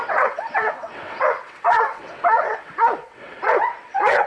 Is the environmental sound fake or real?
fake